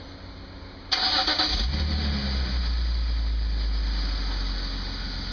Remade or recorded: recorded